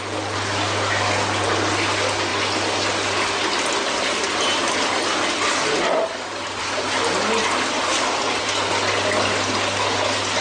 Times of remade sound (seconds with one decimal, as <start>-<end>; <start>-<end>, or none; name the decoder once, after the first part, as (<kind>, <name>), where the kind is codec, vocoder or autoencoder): none

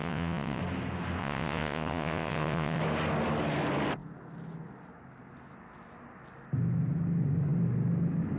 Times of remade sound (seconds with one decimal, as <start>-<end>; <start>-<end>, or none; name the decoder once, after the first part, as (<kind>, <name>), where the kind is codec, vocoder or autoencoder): 0.0-0.6 (vocoder, WaveNeXt); 1.2-2.8

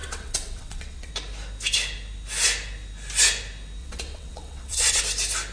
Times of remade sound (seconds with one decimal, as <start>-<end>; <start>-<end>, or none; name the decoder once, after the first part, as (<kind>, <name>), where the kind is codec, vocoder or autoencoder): 0.0-1.1 (vocoder, WaveNeXt); 3.8-5.0